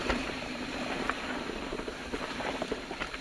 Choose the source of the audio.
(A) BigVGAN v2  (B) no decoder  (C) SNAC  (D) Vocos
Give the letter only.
A